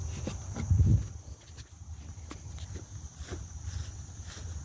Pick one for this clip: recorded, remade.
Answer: recorded